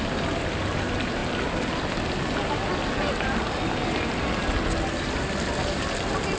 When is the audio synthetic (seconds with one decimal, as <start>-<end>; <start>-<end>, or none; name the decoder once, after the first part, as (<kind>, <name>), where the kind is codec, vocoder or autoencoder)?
none